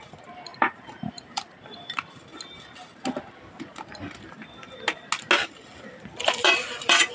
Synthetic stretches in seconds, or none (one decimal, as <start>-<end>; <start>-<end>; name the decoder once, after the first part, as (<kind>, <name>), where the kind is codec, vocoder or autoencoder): 0.0-2.3 (vocoder, BigVGAN v2); 6.2-7.1